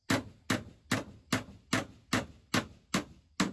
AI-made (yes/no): no